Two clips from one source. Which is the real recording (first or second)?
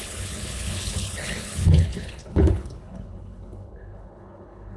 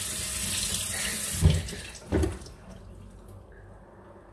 second